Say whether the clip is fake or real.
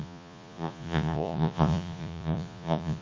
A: fake